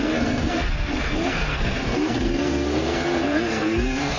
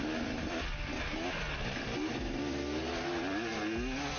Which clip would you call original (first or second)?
second